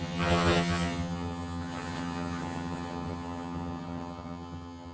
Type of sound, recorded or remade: remade